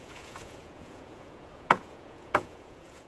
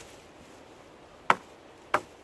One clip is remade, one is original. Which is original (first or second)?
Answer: second